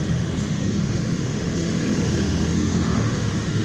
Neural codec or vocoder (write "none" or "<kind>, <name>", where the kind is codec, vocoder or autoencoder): autoencoder, DAC-VAE